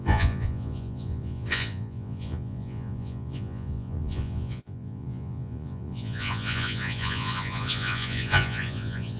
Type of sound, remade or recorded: remade